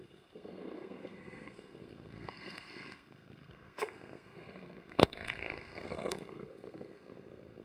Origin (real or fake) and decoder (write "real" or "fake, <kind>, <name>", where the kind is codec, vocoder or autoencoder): fake, codec, SNAC